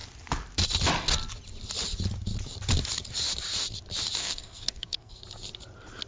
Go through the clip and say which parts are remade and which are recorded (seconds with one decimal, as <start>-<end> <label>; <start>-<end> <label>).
0.0-4.2 recorded; 4.2-5.2 remade; 5.2-6.1 recorded